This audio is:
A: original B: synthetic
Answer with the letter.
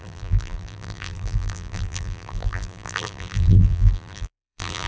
B